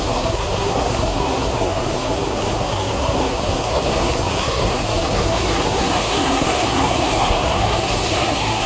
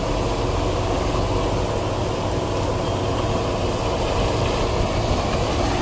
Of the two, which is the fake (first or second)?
first